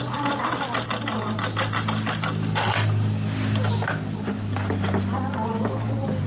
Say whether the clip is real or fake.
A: real